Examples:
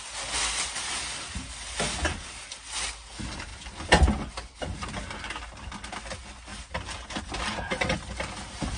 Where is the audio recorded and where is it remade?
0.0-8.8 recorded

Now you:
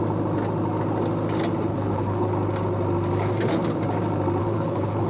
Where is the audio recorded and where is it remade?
0.0-1.7 recorded; 1.7-2.3 remade; 2.3-4.4 recorded; 4.4-5.1 remade